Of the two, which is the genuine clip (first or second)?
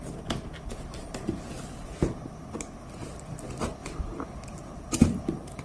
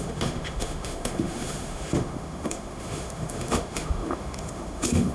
first